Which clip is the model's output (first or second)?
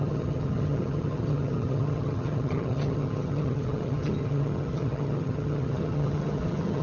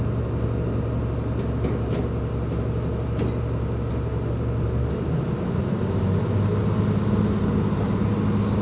first